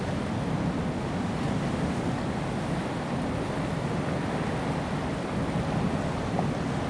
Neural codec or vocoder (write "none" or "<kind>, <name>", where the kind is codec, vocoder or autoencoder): none